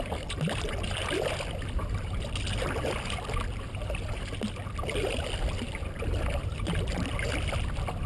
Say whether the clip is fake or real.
real